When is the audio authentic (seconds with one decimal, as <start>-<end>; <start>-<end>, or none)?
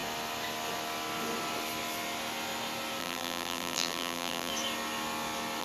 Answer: 0.0-3.0; 4.5-5.6